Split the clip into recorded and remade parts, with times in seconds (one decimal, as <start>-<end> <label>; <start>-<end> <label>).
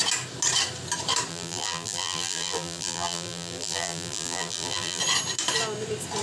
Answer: 0.0-1.3 recorded; 1.3-5.0 remade; 5.0-6.2 recorded